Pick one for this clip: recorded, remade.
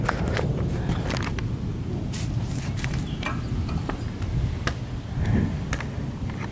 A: recorded